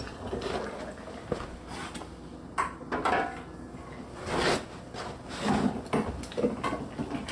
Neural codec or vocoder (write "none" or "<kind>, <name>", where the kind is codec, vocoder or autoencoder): none